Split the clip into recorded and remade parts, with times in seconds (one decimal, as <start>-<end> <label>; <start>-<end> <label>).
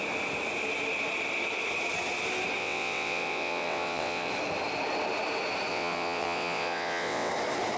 0.0-2.6 recorded; 2.6-4.3 remade; 4.3-5.7 recorded; 5.7-7.3 remade; 7.3-7.8 recorded